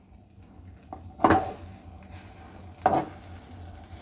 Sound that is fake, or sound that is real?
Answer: real